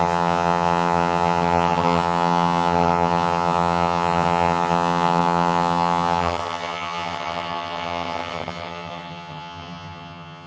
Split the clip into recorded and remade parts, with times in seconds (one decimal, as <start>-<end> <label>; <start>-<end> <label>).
0.0-10.5 remade